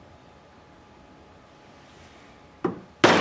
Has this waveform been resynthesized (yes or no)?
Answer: no